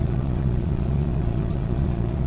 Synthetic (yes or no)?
yes